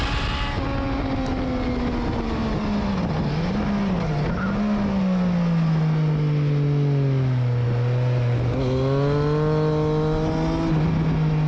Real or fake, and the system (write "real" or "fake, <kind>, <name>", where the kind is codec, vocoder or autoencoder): real